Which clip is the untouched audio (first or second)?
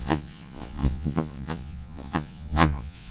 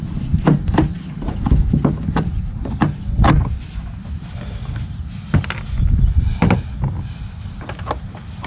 second